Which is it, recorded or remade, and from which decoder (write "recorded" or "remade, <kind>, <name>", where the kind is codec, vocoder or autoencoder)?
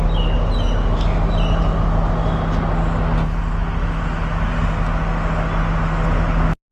recorded